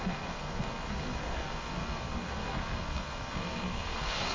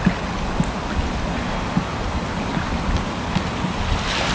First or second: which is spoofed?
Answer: first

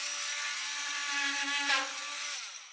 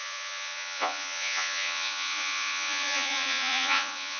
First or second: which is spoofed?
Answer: second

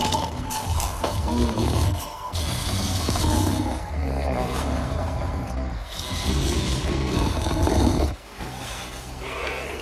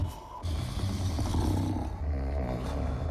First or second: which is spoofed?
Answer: first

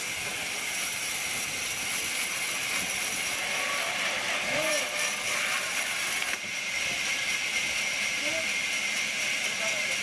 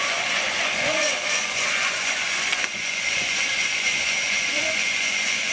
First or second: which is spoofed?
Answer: second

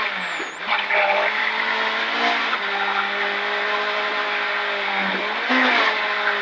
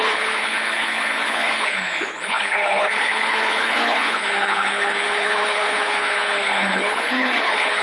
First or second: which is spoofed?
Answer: second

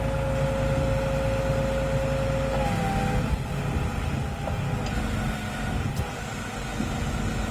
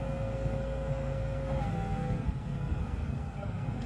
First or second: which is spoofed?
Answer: second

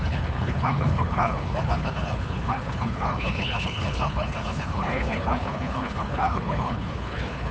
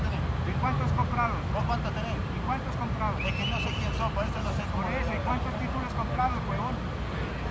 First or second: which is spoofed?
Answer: first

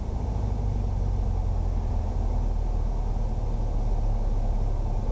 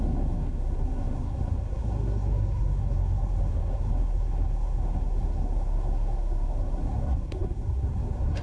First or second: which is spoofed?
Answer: second